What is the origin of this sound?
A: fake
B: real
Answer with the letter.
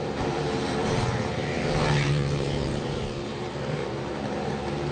A